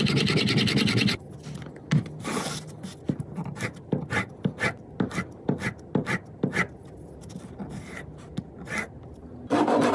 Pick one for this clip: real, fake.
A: real